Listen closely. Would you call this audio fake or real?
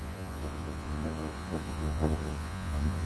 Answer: fake